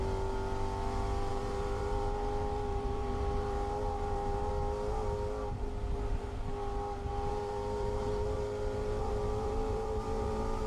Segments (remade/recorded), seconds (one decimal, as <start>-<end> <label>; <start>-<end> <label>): 0.0-1.3 recorded; 1.3-4.5 remade; 4.5-7.1 recorded; 7.1-10.7 remade